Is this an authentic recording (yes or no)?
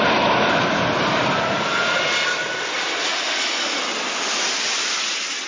yes